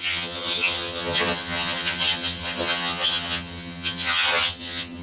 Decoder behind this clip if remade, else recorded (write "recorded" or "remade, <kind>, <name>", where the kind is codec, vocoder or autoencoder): remade, vocoder, HiFi-GAN